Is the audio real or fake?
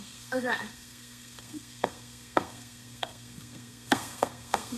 fake